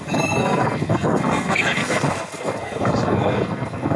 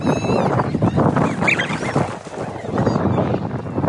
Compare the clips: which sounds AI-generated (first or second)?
first